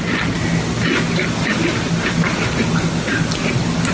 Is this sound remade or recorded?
recorded